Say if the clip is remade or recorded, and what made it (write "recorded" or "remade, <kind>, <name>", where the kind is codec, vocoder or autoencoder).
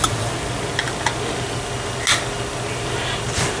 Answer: recorded